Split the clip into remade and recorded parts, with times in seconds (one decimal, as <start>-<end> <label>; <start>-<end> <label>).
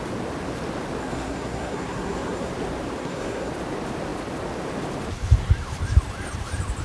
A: 0.0-1.0 recorded; 1.0-2.5 remade; 2.5-3.0 recorded; 3.0-3.5 remade; 3.5-6.8 recorded